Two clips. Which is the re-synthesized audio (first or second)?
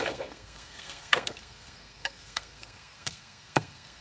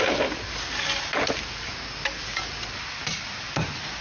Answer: first